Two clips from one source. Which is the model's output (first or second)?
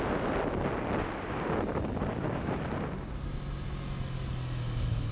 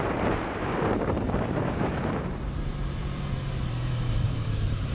second